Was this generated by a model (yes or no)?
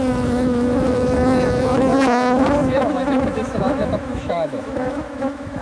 yes